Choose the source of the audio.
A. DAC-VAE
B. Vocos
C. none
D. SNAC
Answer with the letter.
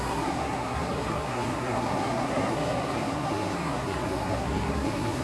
D